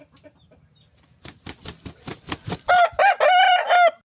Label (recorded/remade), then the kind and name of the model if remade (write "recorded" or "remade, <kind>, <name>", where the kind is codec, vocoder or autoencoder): recorded